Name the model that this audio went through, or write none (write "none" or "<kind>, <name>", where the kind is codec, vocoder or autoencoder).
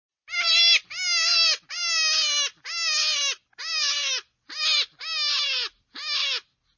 none